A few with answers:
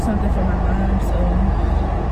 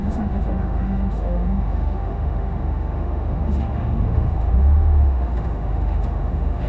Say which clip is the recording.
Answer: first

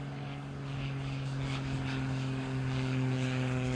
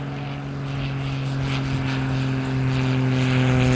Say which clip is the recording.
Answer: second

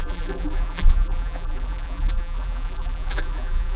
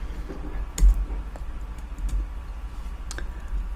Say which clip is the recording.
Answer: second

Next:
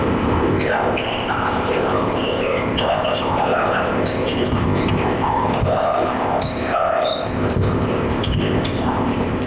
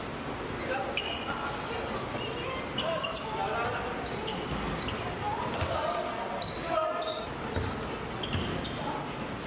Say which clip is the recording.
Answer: second